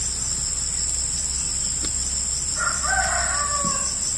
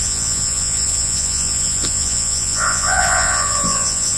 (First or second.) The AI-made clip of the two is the second